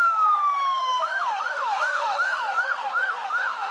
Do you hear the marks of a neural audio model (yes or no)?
yes